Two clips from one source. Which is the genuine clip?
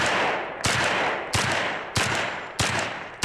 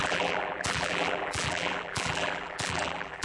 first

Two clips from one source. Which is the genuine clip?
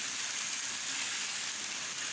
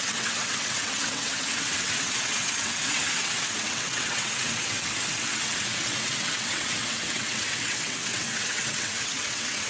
first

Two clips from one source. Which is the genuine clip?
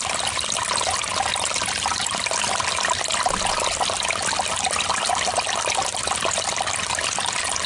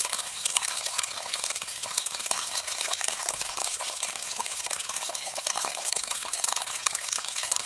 first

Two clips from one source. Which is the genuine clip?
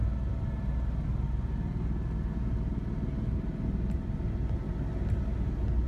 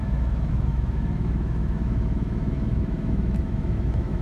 first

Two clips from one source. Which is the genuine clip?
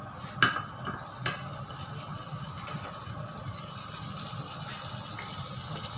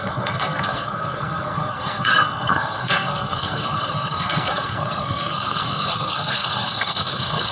first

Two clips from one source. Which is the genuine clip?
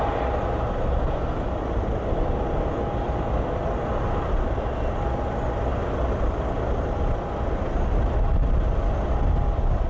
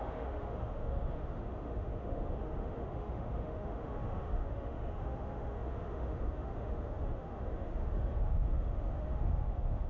first